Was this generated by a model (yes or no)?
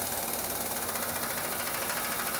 no